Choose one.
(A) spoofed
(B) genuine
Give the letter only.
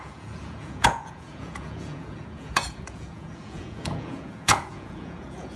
A